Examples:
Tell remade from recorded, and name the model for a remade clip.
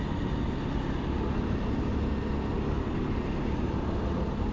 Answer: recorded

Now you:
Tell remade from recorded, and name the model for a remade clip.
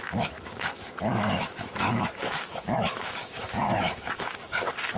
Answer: remade, autoencoder, DAC-VAE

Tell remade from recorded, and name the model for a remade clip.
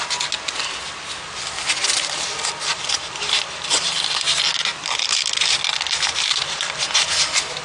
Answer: recorded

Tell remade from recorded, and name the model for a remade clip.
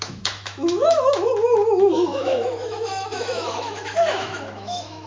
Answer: remade, autoencoder, DAC-VAE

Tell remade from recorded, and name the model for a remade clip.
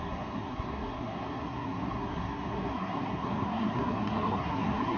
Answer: remade, codec, SNAC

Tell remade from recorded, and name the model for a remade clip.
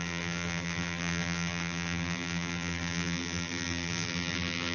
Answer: remade, vocoder, BigVGAN v2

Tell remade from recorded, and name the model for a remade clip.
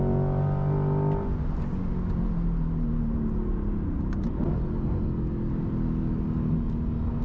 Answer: recorded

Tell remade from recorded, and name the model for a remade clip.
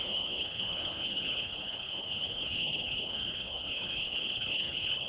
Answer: remade, codec, HILCodec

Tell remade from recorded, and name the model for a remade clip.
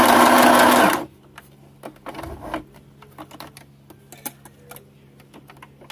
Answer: recorded